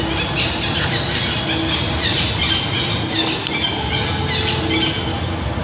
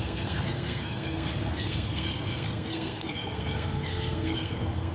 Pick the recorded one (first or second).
first